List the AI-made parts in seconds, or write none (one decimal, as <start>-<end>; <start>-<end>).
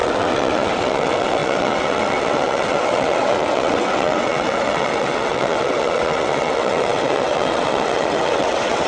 0.0-8.9